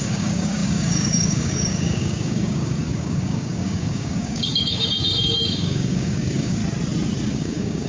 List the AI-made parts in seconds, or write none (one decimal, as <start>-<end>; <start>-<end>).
0.0-6.6; 7.3-7.9